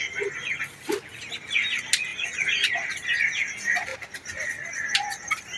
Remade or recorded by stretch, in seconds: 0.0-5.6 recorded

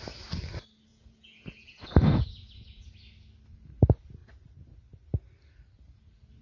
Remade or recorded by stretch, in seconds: 0.0-0.9 recorded; 0.9-2.9 remade; 2.9-6.4 recorded

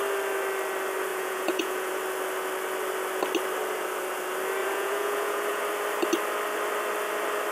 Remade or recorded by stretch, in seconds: 0.0-1.1 recorded; 1.1-1.9 remade; 1.9-4.6 recorded; 4.6-5.6 remade; 5.6-7.5 recorded

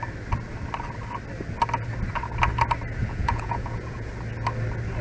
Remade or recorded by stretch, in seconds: 0.0-3.0 recorded; 3.0-4.1 remade; 4.1-5.0 recorded